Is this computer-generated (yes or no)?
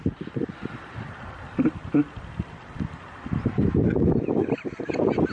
no